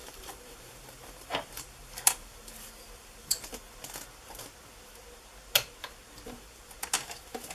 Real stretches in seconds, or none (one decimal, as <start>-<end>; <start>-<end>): 3.5-7.5